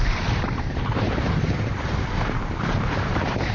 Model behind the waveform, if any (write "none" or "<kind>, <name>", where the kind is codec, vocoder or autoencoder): vocoder, BigVGAN v2